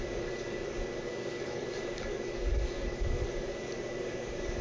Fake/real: fake